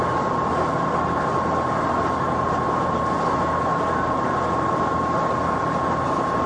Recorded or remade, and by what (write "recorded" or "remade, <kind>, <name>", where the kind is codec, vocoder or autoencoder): recorded